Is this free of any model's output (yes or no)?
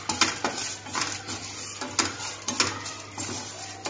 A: yes